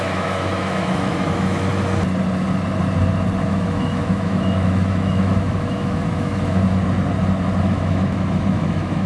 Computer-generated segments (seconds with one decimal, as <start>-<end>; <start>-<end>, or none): 0.0-1.7; 3.5-6.6; 7.6-9.1